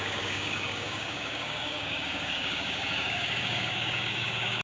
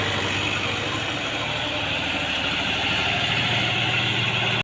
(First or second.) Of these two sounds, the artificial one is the first